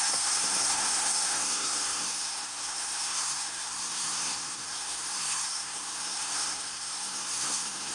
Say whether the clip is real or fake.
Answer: fake